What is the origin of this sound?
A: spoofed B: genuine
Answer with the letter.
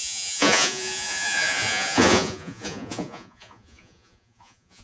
A